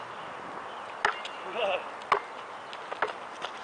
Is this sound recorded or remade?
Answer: recorded